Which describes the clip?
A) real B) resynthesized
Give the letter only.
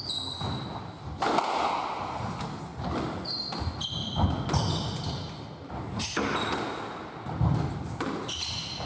A